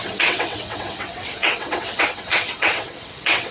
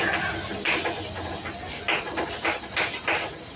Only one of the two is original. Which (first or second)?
second